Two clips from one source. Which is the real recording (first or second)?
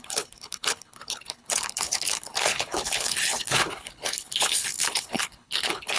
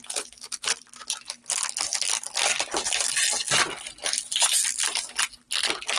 second